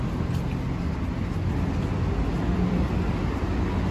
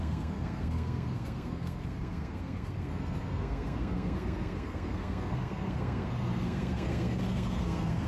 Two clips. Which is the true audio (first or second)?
first